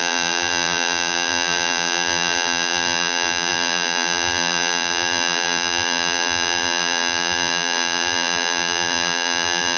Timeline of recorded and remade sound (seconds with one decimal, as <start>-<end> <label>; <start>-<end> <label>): 0.0-9.8 remade